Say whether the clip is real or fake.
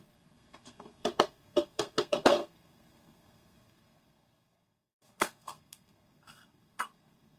fake